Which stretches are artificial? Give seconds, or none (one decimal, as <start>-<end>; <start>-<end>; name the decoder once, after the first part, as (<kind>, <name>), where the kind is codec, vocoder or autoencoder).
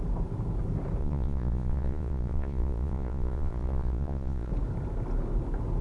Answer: 1.0-4.5 (vocoder, Vocos)